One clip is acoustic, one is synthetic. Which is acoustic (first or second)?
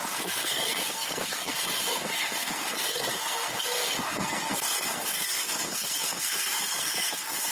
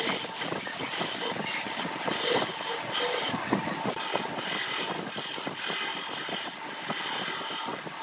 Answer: second